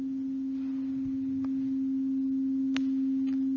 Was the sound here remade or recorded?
recorded